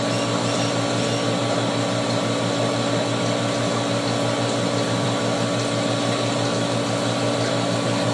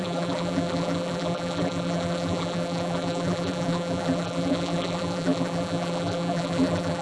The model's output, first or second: second